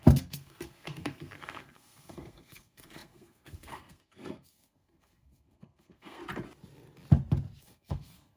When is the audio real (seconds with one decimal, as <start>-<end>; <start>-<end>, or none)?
6.2-7.6